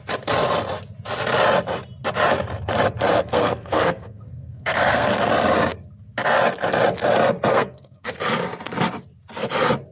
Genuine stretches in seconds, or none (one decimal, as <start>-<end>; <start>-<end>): 0.0-3.1; 5.3-7.5; 8.1-9.9